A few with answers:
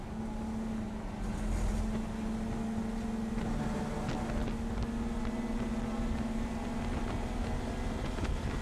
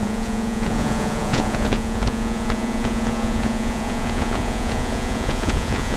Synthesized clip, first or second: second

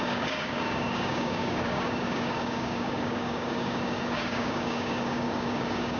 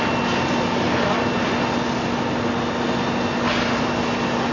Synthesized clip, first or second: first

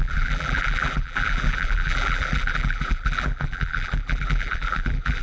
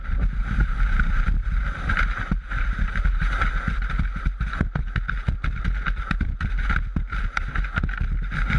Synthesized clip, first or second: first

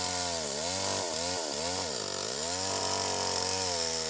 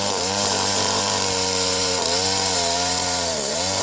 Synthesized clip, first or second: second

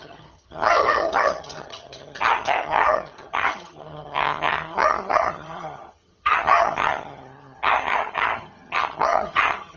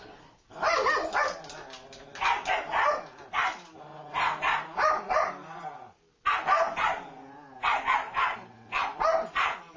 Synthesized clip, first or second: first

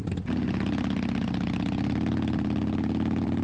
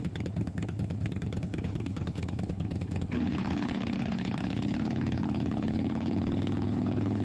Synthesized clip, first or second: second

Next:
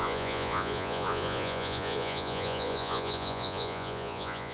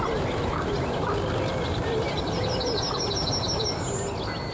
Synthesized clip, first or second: first